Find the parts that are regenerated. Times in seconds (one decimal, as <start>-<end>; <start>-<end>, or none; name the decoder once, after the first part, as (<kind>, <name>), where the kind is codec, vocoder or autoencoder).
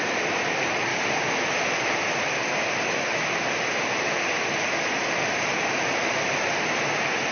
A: none